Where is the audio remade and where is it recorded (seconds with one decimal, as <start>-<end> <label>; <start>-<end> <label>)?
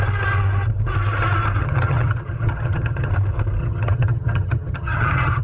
0.0-1.6 recorded; 1.6-3.1 remade; 3.1-3.6 recorded; 3.6-5.4 remade